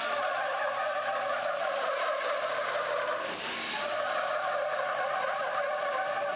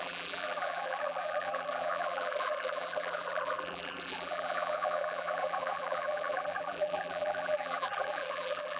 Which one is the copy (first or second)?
second